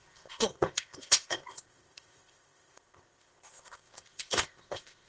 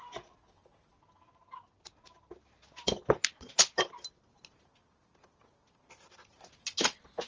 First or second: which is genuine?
second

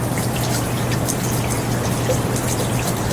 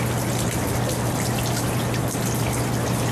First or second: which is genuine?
second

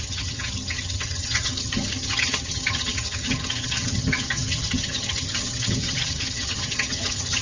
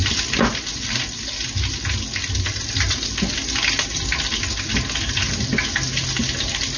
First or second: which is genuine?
second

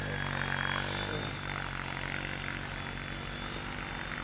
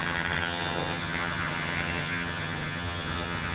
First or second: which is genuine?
first